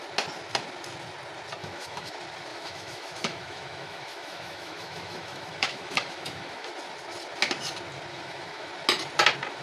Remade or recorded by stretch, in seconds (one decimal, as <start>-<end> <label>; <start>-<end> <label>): 0.0-1.6 recorded; 1.6-2.1 remade; 2.1-2.5 recorded; 2.5-6.7 remade; 6.7-8.1 recorded; 8.1-8.7 remade; 8.7-9.6 recorded